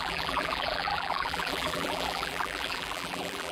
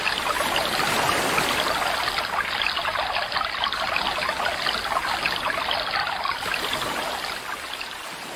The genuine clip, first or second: second